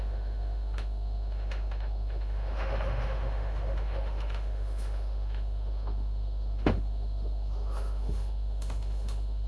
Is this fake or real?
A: fake